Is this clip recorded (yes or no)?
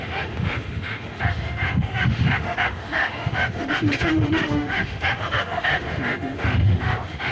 no